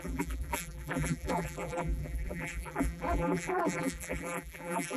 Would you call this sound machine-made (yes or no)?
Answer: yes